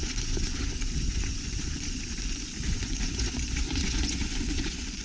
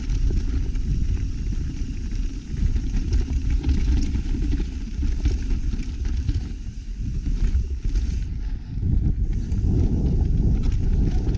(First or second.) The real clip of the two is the second